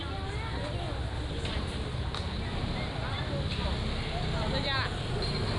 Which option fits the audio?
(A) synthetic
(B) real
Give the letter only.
B